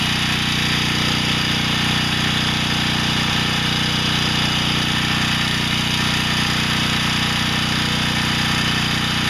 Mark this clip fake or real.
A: real